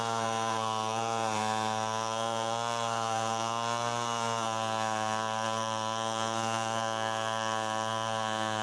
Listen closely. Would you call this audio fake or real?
fake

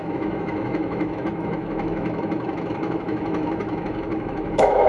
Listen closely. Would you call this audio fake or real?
fake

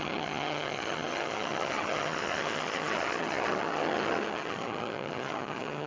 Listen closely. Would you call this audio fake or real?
fake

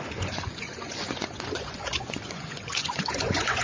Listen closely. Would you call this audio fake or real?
fake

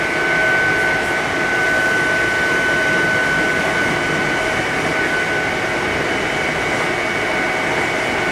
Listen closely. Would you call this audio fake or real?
real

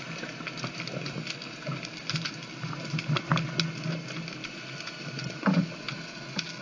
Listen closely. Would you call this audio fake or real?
real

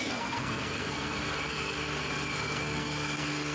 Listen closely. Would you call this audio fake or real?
fake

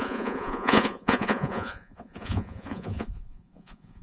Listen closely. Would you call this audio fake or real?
fake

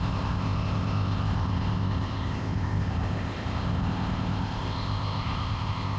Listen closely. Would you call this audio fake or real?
fake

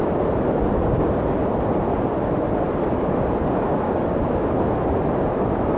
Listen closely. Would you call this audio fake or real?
fake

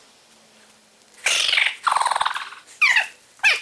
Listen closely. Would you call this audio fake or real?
real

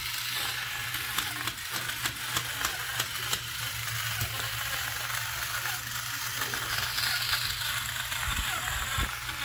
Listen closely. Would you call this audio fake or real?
real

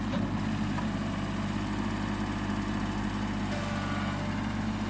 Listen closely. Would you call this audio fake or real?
real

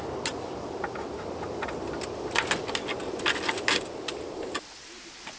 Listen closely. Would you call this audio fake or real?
real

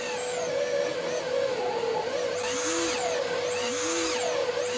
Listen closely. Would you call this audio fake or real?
real